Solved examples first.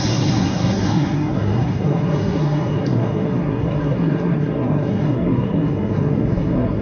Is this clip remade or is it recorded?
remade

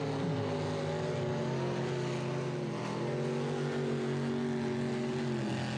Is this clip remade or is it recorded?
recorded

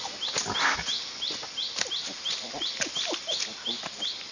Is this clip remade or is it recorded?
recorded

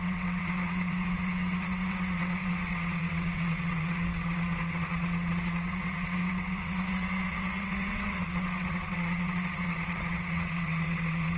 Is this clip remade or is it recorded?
remade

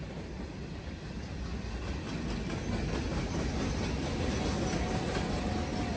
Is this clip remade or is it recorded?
recorded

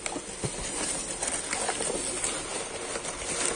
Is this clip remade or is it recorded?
recorded